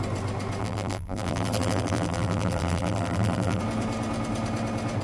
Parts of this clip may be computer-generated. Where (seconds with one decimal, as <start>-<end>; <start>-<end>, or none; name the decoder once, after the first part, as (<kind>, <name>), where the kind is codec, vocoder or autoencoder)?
0.6-3.6 (vocoder, BigVGAN v2)